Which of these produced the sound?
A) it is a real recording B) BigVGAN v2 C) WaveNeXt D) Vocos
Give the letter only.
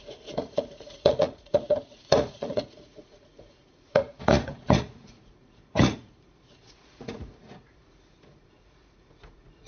D